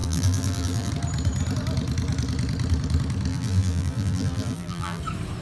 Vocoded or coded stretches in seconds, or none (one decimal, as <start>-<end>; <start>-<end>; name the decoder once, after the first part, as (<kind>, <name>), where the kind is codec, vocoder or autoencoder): 0.0-0.9 (vocoder, BigVGAN v2); 3.3-5.0